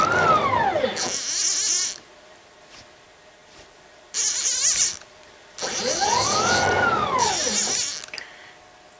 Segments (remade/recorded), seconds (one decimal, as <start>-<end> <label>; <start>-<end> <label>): 0.0-3.4 recorded; 3.4-7.3 remade; 7.3-9.0 recorded